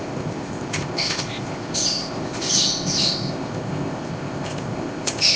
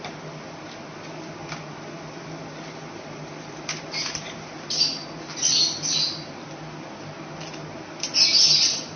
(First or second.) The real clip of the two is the second